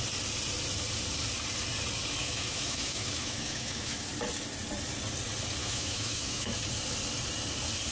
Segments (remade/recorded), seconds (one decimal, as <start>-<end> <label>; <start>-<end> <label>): 0.0-2.2 recorded; 2.2-4.1 remade; 4.1-5.6 recorded; 5.6-6.5 remade; 6.5-7.9 recorded